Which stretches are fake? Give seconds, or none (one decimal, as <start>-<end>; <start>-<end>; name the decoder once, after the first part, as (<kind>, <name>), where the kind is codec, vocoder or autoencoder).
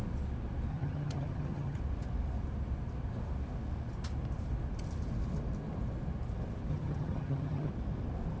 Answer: 0.7-1.8 (vocoder, HiFi-GAN); 6.7-7.7